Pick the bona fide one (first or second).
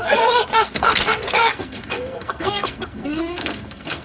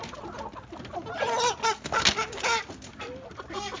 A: second